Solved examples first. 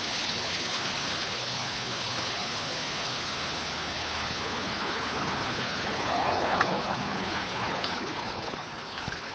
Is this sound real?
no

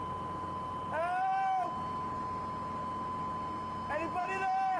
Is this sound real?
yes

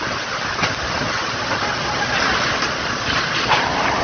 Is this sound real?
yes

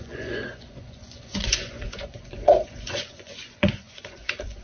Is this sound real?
no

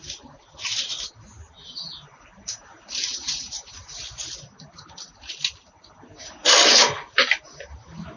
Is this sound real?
yes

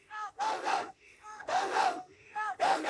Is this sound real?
no